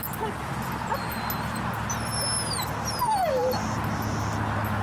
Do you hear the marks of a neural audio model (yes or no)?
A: no